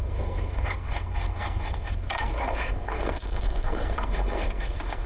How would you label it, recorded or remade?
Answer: remade